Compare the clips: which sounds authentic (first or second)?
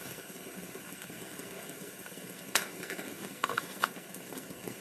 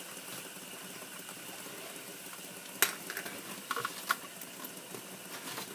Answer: second